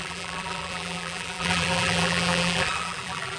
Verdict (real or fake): fake